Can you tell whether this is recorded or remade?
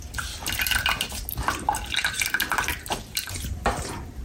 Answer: recorded